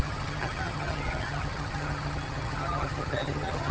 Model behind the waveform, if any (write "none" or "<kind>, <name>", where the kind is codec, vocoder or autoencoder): vocoder, HiFi-GAN